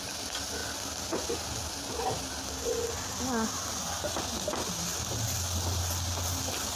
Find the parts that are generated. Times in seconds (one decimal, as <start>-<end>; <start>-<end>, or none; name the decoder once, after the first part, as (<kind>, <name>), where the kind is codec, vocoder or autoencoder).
none